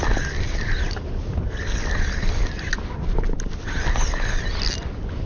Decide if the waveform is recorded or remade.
recorded